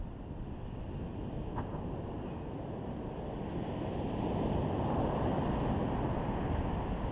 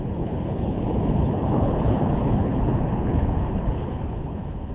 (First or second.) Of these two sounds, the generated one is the second